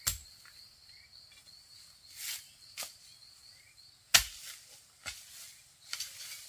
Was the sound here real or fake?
real